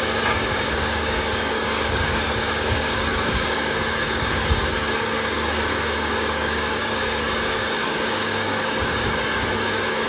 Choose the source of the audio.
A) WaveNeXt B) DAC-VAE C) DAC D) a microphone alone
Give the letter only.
C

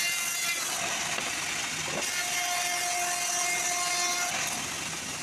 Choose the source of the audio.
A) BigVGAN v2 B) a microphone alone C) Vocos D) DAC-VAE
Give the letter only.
B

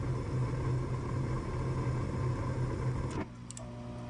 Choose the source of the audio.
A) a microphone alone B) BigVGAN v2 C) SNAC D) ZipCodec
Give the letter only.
A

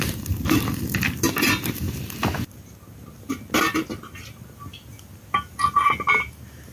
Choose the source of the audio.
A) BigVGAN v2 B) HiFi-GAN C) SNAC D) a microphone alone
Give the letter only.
D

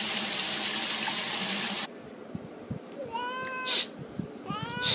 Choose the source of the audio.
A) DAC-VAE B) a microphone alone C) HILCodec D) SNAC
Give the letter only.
B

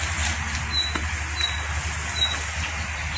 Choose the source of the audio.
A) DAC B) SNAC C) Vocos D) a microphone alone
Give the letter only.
D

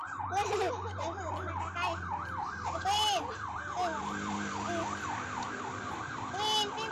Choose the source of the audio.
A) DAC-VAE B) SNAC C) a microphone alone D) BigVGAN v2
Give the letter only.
C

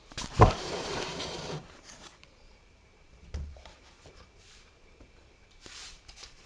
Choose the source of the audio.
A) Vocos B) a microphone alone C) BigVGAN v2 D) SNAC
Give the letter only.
C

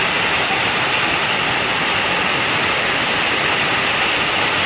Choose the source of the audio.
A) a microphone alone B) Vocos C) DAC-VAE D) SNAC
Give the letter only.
A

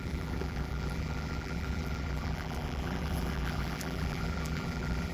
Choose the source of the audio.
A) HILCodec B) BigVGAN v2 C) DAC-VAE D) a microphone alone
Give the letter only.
B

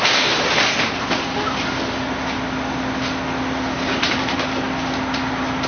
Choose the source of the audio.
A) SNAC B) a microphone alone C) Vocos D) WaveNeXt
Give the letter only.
B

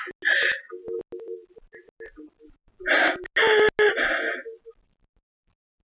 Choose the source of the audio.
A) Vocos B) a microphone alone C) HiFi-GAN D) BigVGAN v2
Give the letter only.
B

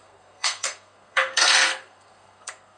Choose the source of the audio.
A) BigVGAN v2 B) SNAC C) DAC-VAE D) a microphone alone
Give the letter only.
B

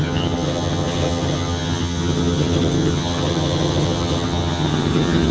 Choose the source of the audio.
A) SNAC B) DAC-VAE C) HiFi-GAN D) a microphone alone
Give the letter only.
C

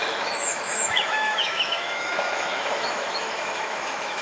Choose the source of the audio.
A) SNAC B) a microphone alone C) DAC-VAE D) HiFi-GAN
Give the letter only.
C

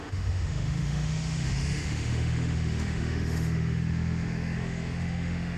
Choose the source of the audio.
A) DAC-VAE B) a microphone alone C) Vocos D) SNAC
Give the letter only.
A